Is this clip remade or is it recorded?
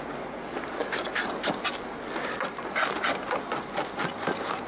recorded